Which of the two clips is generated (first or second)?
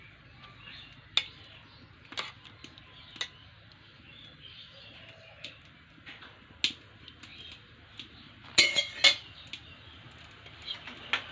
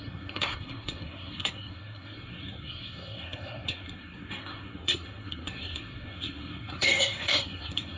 second